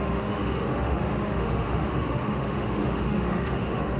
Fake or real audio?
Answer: fake